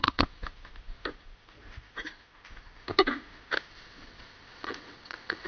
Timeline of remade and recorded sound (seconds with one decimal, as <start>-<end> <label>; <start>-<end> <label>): 0.0-0.4 remade; 0.4-3.7 recorded; 3.7-5.5 remade